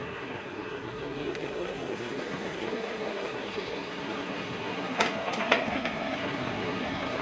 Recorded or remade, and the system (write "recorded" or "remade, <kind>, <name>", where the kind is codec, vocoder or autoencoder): remade, codec, SNAC